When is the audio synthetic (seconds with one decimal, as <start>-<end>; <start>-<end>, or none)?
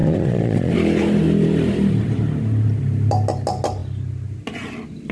0.0-0.7